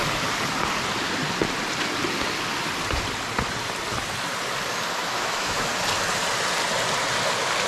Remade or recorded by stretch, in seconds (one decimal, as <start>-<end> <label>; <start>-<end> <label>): 0.0-5.0 recorded; 5.0-5.7 remade; 5.7-7.7 recorded